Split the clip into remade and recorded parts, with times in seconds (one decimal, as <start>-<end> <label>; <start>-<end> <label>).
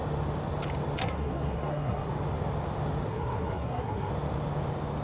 0.0-1.0 recorded; 1.0-2.1 remade; 2.1-3.1 recorded; 3.1-4.1 remade; 4.1-5.0 recorded